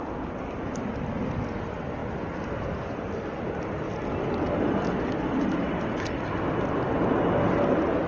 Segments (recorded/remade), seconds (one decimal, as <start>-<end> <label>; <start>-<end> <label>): 0.0-8.1 recorded